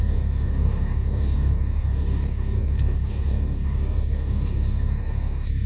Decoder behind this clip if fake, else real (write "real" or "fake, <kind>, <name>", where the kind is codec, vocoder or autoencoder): fake, codec, DAC